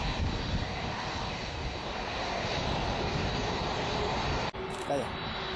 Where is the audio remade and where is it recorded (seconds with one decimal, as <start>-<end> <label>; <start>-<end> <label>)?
0.0-5.6 remade